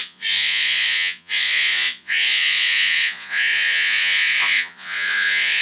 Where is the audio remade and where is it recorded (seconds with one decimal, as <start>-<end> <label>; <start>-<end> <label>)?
0.0-5.6 remade